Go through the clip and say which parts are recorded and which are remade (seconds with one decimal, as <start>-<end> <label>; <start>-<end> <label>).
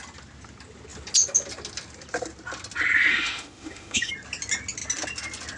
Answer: 0.0-3.1 recorded; 3.1-4.1 remade; 4.1-5.6 recorded